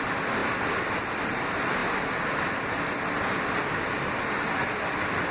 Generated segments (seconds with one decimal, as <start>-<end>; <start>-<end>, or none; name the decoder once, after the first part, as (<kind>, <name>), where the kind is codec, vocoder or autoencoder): 0.0-1.8 (vocoder, BigVGAN v2)